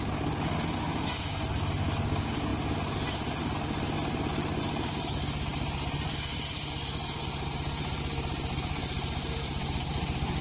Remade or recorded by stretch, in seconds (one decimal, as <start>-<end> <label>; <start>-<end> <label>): 0.0-10.4 recorded